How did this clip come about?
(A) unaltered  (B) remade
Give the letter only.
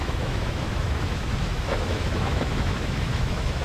B